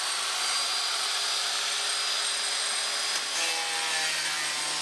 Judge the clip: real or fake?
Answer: real